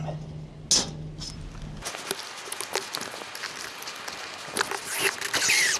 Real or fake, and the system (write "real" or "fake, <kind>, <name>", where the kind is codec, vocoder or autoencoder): real